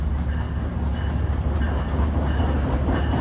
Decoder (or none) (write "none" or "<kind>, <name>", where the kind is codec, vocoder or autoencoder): none